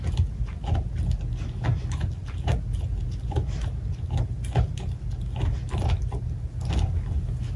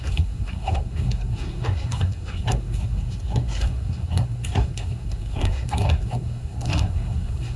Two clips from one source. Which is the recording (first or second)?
first